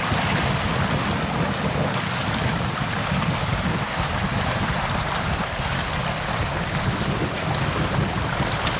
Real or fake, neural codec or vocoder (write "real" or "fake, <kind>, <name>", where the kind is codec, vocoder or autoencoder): real